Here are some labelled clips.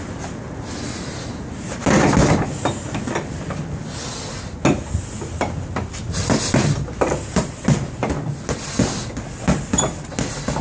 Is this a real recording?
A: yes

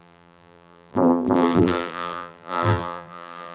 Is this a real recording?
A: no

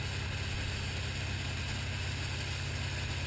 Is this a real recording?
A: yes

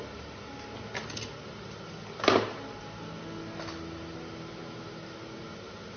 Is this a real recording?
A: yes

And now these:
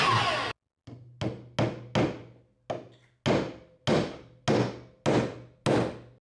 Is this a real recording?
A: yes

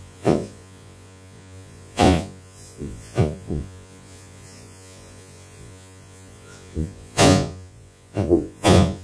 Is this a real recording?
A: no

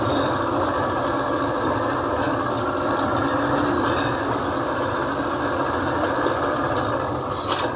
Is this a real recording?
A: yes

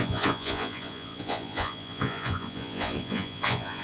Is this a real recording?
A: no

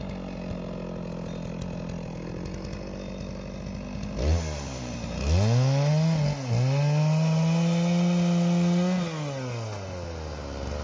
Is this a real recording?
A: yes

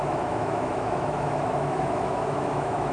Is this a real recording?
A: no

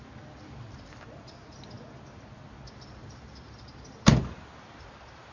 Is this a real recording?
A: yes